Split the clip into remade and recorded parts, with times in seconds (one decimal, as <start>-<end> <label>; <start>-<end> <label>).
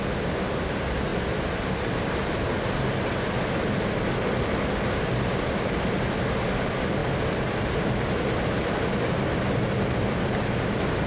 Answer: 0.0-11.1 recorded